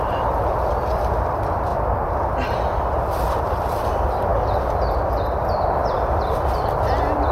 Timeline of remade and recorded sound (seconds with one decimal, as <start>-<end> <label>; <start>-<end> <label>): 0.0-1.7 remade; 1.7-3.4 recorded; 3.4-4.3 remade; 4.3-5.1 recorded; 5.1-7.3 remade